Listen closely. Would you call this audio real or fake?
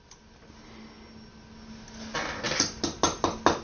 real